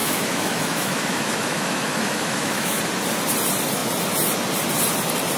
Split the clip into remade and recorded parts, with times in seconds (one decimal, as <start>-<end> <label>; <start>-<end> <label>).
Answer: 0.0-2.8 remade; 2.8-5.4 recorded